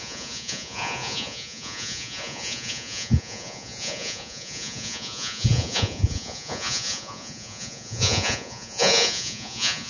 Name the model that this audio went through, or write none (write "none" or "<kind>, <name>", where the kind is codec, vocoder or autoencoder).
vocoder, Vocos